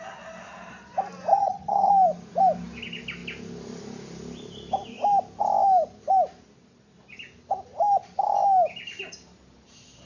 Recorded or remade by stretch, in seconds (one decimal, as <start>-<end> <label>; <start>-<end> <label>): 0.0-1.3 recorded; 1.3-1.9 remade; 1.9-10.1 recorded